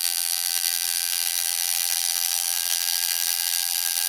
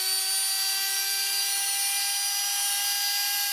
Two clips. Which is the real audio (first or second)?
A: second